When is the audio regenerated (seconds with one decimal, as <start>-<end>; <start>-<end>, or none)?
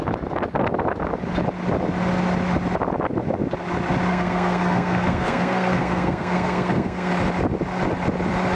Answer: 4.1-7.1